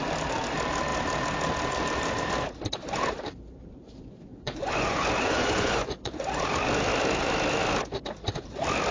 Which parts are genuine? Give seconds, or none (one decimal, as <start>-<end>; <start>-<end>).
0.0-4.3; 6.1-8.9